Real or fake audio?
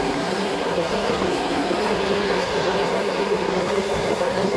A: fake